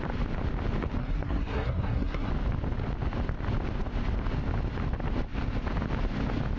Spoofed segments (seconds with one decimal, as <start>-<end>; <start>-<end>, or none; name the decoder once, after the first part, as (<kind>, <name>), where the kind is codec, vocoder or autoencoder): 1.0-2.3 (codec, SNAC)